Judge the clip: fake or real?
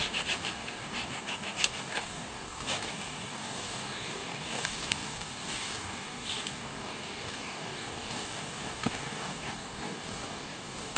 fake